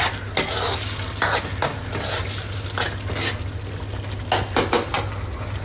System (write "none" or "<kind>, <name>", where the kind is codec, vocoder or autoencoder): none